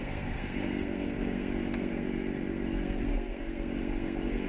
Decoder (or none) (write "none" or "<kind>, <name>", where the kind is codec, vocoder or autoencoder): codec, SNAC